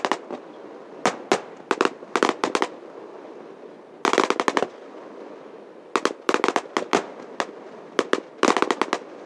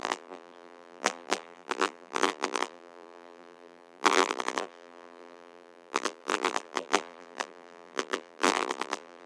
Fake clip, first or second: second